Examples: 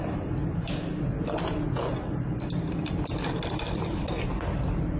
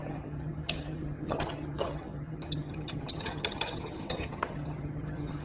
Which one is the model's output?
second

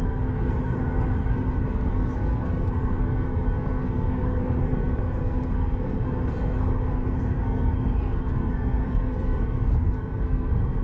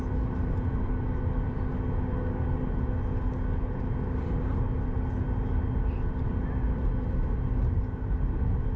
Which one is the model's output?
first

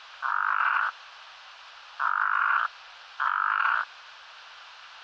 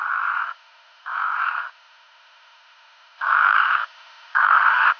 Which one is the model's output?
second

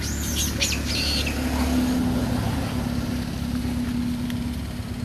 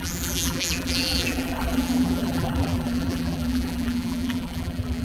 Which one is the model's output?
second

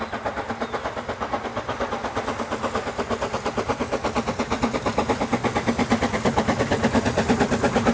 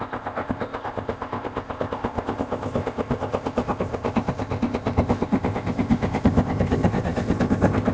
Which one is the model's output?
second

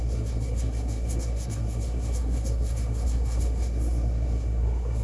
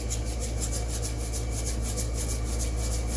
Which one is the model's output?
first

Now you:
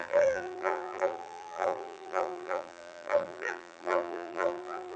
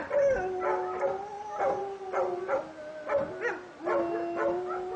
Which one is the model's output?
first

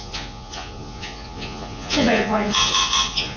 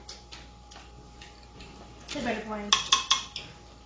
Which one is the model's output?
first